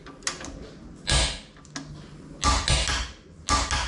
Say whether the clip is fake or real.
real